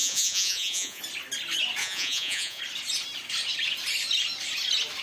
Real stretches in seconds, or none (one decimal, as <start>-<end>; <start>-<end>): 1.0-1.8; 2.6-5.0